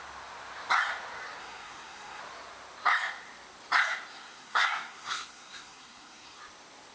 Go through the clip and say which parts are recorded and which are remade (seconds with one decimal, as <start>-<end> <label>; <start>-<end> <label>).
0.0-1.4 recorded; 1.4-2.2 remade; 2.2-4.1 recorded; 4.1-6.4 remade; 6.4-6.9 recorded